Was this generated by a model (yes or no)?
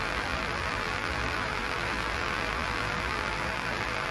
yes